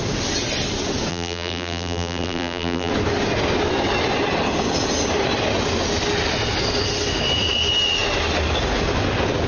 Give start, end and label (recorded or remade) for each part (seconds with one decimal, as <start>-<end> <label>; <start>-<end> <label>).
0.0-1.1 recorded; 1.1-2.9 remade; 2.9-9.5 recorded